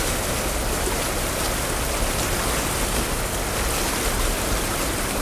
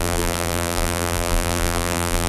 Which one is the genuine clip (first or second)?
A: first